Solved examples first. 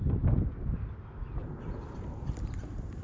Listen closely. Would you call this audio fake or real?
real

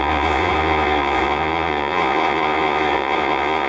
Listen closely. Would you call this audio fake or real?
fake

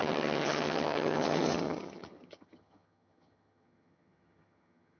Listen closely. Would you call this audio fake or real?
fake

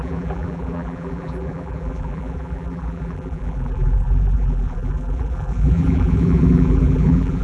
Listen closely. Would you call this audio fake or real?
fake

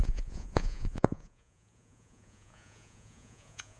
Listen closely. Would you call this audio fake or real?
fake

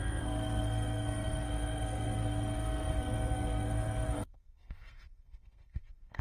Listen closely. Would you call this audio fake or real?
fake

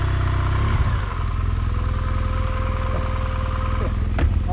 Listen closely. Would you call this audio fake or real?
real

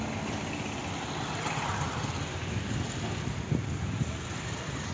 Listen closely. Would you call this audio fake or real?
real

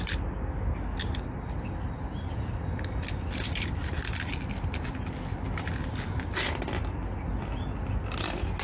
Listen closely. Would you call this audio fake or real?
real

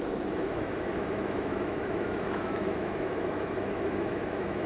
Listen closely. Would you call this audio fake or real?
fake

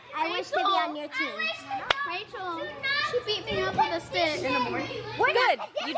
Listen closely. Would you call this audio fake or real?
real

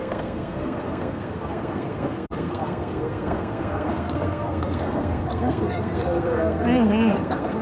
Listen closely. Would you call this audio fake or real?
fake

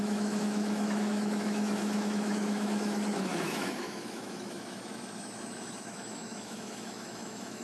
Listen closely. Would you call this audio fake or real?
fake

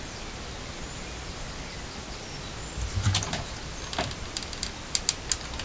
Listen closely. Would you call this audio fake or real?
real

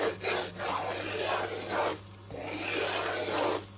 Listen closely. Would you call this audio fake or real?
real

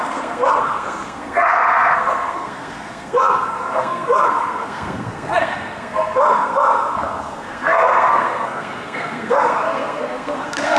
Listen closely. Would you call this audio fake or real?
fake